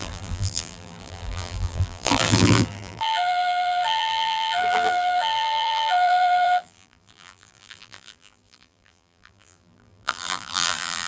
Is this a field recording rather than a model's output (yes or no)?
no